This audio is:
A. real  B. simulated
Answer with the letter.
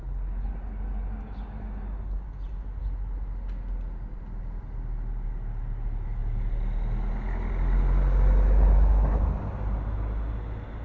A